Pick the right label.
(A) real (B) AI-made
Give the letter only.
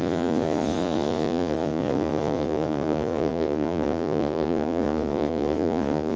B